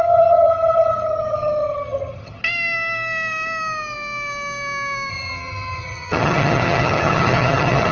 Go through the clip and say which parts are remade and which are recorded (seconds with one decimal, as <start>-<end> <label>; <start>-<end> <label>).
0.0-2.4 remade; 2.4-5.1 recorded; 5.1-7.9 remade